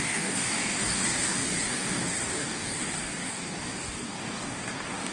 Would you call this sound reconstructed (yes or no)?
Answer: yes